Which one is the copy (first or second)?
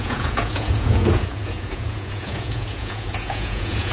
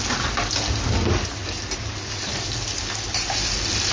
first